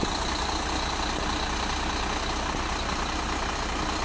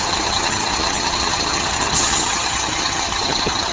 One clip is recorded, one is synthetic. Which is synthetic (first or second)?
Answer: second